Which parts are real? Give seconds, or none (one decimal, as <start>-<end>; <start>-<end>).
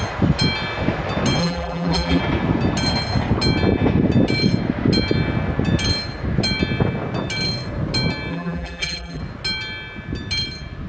0.0-1.4; 2.2-8.3; 9.2-10.9